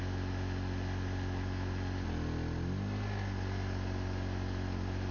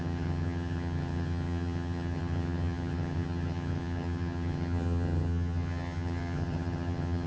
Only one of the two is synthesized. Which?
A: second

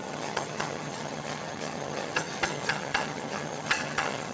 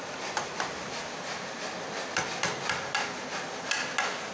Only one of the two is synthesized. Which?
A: first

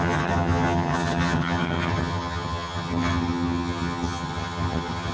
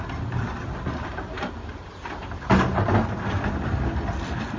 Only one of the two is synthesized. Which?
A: first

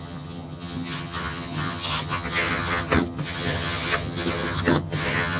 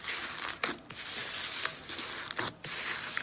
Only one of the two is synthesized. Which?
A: first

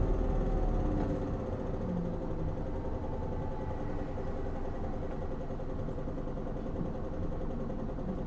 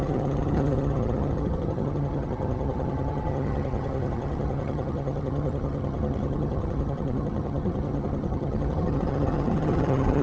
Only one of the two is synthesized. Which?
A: second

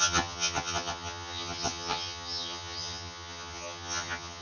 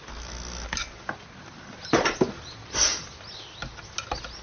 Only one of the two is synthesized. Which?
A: first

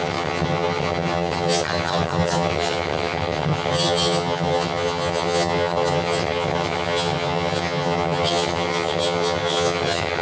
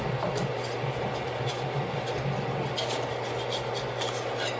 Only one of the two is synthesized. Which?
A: first